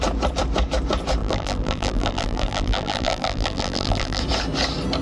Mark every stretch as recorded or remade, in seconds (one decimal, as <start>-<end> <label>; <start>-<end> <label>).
0.0-1.2 recorded; 1.2-4.2 remade; 4.2-5.0 recorded